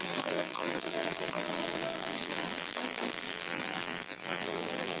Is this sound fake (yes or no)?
yes